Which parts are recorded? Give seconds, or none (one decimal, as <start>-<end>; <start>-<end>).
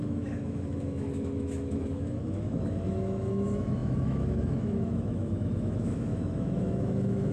none